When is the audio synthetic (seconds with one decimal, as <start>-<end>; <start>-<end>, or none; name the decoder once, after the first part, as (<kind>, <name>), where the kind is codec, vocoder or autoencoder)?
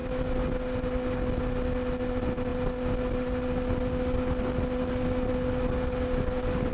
none